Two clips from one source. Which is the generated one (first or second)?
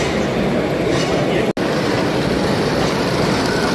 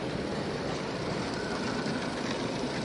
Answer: second